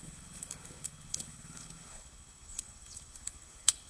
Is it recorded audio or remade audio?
remade